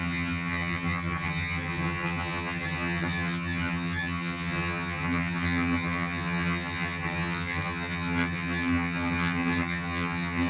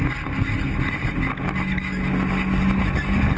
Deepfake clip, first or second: first